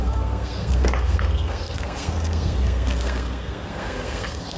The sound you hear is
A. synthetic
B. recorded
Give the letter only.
A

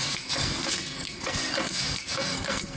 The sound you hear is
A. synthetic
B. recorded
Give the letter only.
A